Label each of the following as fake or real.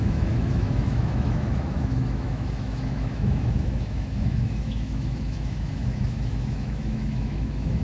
fake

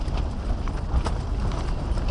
real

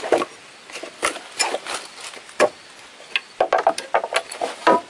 real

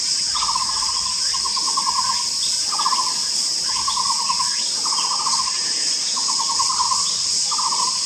real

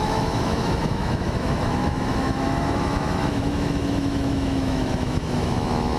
fake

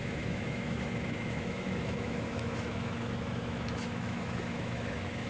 fake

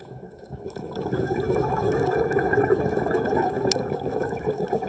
fake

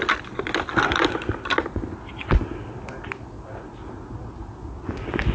real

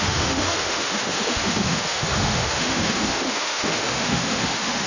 fake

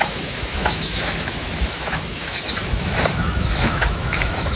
fake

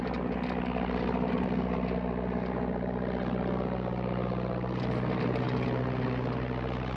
real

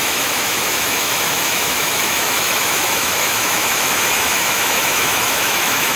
fake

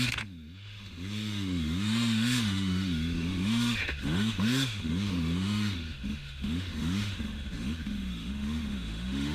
fake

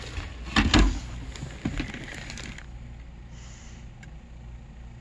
real